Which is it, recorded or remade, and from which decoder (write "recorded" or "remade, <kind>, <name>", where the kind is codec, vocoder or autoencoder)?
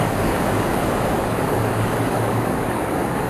remade, codec, DAC